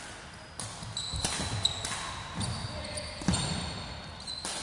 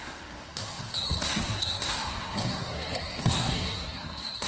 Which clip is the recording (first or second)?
first